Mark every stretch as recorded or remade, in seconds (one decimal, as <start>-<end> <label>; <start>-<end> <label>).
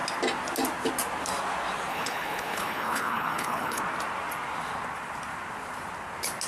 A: 0.0-1.9 recorded; 1.9-3.8 remade; 3.8-6.5 recorded